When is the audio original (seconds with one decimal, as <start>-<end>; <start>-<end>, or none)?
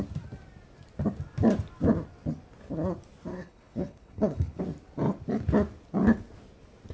0.0-3.3; 4.6-6.9